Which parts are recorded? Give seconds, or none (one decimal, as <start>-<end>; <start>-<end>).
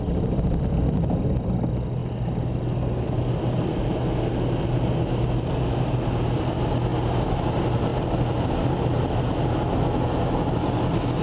0.0-11.2